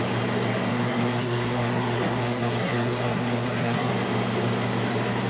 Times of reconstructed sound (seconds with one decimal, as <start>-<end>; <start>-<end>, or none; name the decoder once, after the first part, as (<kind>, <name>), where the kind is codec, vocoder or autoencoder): 0.7-3.9 (codec, SNAC)